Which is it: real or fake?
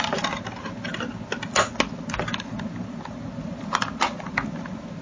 real